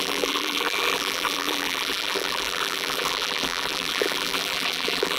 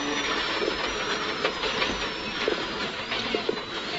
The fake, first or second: first